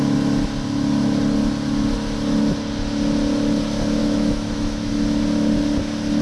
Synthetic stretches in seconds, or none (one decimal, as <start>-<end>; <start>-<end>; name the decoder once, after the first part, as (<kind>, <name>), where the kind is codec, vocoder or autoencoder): 4.0-4.9 (autoencoder, DAC-VAE)